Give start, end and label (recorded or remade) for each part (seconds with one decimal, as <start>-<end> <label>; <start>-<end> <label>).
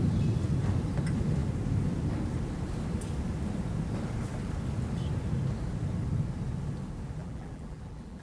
0.0-7.2 recorded; 7.2-8.2 remade